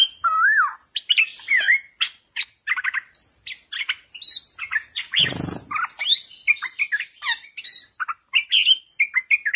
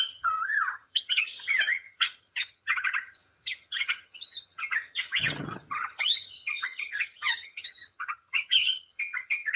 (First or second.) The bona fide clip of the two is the first